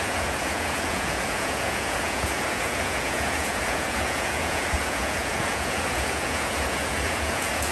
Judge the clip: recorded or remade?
remade